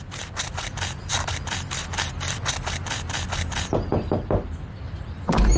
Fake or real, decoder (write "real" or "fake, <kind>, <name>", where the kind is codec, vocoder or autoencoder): real